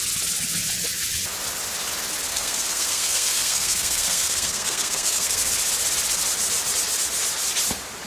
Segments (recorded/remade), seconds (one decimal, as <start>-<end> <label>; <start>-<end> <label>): 0.0-2.3 recorded; 2.3-5.5 remade; 5.5-8.1 recorded